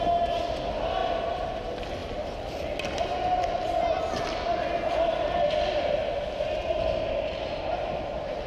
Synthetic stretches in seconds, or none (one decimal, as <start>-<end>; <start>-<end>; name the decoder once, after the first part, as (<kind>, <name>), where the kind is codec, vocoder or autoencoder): 1.0-1.6 (vocoder, BigVGAN v2)